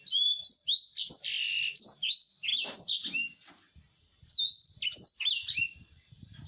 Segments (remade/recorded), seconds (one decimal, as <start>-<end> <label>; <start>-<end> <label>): 0.0-6.5 recorded